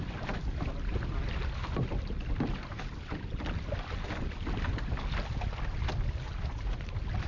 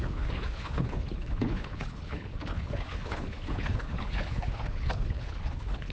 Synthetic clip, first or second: second